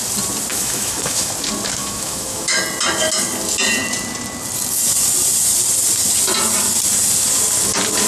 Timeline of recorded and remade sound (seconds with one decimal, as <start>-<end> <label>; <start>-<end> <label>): 0.0-0.5 recorded; 0.5-1.3 remade; 1.3-1.8 recorded; 1.8-2.6 remade; 2.6-8.1 recorded